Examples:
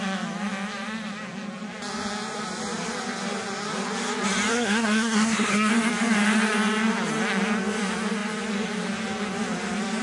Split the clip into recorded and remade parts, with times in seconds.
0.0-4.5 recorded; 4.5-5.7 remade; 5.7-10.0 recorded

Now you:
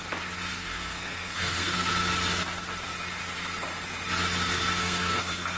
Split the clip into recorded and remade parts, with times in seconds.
0.0-0.5 recorded; 0.5-1.9 remade; 1.9-4.8 recorded; 4.8-5.6 remade

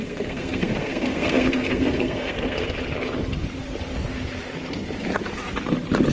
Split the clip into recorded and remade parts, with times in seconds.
0.0-2.7 remade; 2.7-6.1 recorded